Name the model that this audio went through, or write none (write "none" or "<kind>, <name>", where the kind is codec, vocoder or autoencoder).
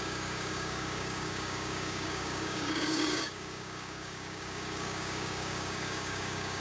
codec, DAC